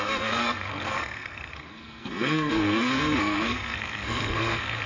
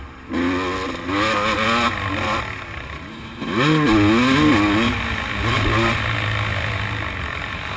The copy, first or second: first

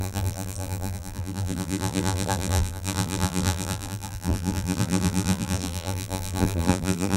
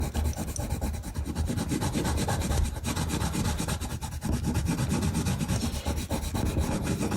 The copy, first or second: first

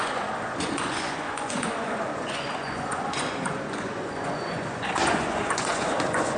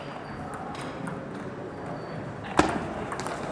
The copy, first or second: first